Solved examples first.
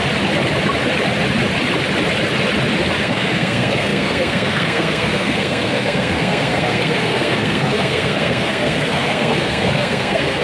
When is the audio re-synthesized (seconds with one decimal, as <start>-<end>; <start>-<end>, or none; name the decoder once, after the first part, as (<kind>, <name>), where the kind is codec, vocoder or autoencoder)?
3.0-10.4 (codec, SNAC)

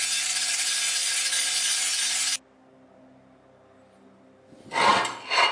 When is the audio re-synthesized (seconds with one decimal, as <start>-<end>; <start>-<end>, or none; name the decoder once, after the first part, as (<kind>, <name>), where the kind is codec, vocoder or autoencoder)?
none

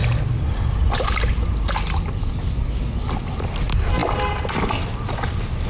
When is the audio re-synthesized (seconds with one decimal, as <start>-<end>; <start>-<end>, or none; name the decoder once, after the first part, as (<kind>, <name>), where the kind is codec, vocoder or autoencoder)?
none

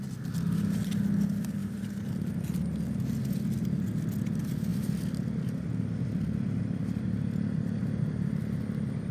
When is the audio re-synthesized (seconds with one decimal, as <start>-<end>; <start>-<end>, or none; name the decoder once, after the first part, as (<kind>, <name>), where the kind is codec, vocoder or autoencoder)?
1.6-2.3 (vocoder, BigVGAN v2)

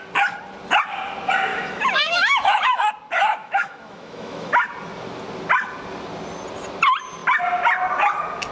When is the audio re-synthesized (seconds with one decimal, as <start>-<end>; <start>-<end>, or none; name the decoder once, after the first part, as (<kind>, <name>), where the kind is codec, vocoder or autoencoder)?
1.5-2.9 (autoencoder, DAC-VAE); 3.4-4.7

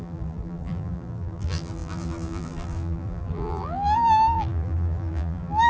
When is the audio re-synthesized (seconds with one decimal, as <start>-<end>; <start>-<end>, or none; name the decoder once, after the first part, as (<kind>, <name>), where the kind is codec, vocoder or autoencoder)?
0.0-5.7 (vocoder, BigVGAN v2)